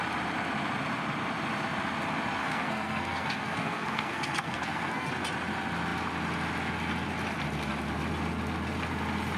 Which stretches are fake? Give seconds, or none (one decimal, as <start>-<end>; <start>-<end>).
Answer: 2.4-5.1